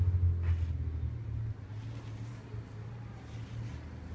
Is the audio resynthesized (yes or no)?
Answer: no